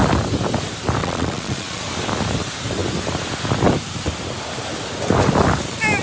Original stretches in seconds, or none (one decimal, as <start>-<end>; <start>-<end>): 0.0-1.0; 1.8-6.0